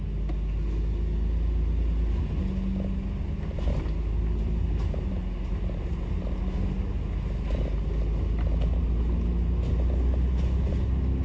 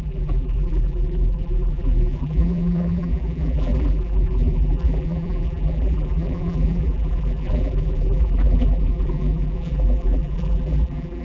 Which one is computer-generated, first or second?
second